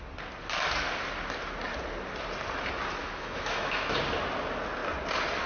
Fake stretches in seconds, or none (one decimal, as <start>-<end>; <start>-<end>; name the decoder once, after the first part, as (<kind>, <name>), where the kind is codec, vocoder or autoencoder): 3.0-4.0 (autoencoder, DAC-VAE)